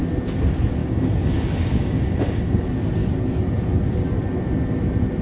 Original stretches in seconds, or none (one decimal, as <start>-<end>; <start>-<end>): 0.0-0.8; 2.6-5.2